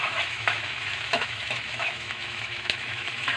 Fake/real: fake